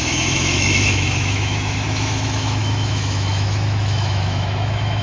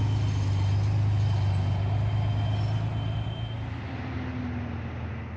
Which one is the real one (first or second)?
second